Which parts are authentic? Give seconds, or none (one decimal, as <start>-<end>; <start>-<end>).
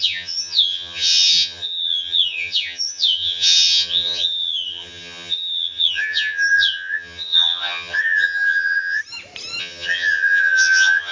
9.0-9.6